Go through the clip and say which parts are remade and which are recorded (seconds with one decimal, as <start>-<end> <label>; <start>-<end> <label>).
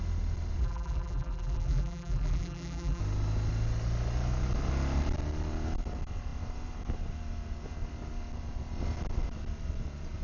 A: 0.0-0.6 recorded; 0.6-3.0 remade; 3.0-10.2 recorded